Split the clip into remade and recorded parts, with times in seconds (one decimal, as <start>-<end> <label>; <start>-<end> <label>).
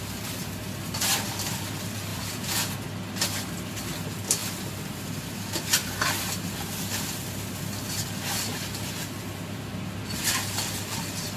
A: 0.0-2.1 recorded; 2.1-2.7 remade; 2.7-11.4 recorded